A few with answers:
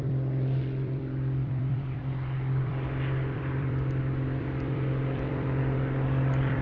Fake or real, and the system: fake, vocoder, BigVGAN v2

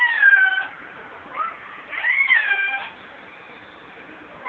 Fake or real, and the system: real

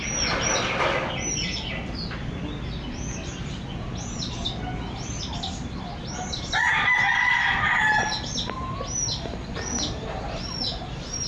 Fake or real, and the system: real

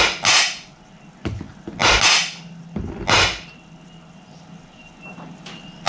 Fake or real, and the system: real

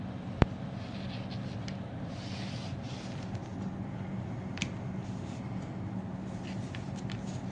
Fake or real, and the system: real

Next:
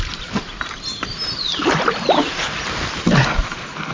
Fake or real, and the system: fake, vocoder, BigVGAN v2